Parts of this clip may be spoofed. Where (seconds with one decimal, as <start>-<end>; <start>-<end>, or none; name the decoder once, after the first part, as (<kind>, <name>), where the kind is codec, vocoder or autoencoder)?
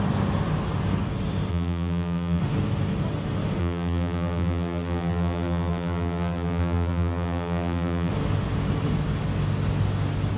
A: 1.5-2.4 (vocoder, BigVGAN v2); 3.6-8.1